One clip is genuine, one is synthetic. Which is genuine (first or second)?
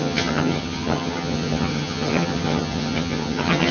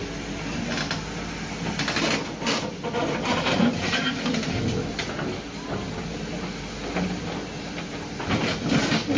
second